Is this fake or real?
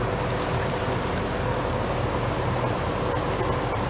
real